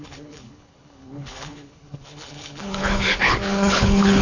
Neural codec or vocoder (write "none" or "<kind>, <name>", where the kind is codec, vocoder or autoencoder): codec, HILCodec